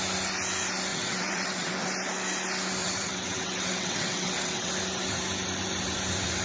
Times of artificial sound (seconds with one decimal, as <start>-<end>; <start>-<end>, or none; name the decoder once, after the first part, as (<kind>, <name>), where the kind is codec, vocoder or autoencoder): 0.9-1.7 (vocoder, WaveNeXt); 2.8-4.7